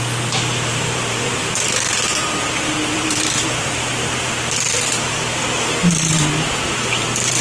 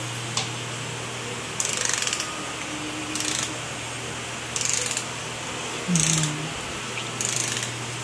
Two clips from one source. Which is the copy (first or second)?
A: first